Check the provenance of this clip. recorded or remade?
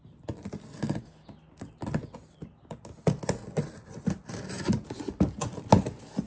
recorded